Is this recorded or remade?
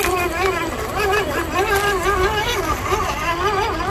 recorded